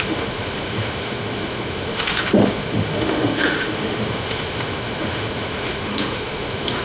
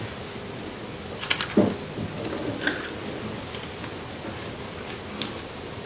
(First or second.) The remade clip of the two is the first